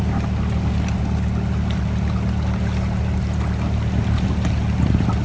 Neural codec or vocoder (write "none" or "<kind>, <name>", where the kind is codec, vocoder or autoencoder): none